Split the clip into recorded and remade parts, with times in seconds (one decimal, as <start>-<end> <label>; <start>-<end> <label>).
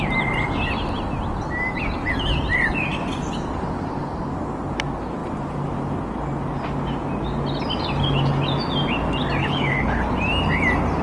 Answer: 0.0-9.4 recorded; 9.4-10.0 remade; 10.0-11.0 recorded